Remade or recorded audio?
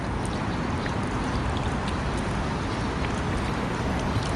recorded